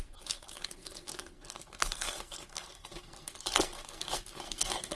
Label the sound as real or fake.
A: fake